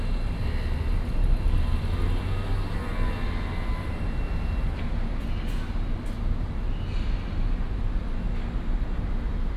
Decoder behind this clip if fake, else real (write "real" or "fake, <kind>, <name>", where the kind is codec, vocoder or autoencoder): real